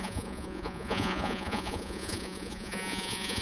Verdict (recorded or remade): remade